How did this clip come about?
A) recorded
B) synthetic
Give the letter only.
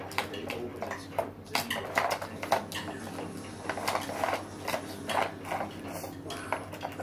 A